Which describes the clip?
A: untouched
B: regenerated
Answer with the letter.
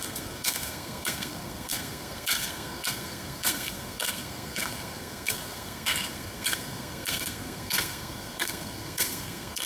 B